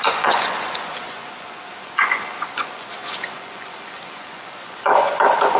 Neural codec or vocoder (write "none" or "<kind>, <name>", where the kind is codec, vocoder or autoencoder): vocoder, Vocos